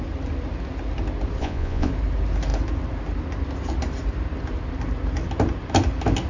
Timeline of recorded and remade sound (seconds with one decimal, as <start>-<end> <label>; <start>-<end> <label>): 0.0-1.4 recorded; 1.4-1.9 remade; 1.9-6.3 recorded